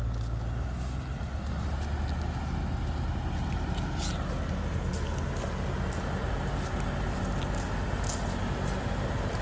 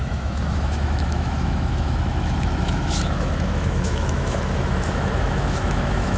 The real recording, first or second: first